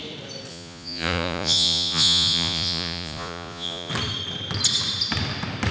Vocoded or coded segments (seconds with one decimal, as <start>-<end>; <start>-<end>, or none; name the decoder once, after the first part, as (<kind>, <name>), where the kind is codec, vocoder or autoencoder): 0.5-3.9 (vocoder, Vocos)